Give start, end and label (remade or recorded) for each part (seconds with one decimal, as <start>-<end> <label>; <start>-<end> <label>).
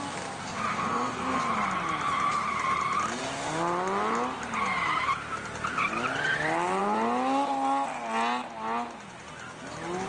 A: 0.0-0.7 recorded; 0.7-1.4 remade; 1.4-10.1 recorded